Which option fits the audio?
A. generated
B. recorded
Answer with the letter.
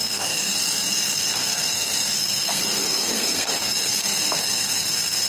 A